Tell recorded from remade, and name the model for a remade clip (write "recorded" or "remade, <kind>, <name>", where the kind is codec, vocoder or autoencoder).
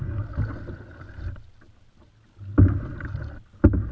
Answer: recorded